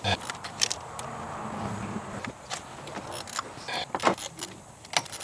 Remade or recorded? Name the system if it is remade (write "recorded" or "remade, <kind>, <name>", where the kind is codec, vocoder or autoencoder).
recorded